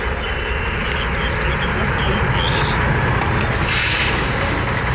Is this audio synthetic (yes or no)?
no